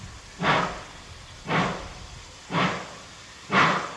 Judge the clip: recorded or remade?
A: recorded